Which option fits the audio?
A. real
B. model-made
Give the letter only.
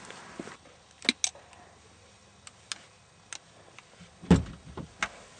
A